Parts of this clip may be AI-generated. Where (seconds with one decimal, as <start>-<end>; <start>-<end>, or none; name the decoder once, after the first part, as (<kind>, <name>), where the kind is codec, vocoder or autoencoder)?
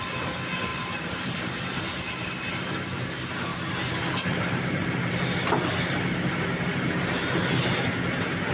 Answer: 0.7-2.1 (vocoder, BigVGAN v2); 3.5-5.8; 6.7-7.3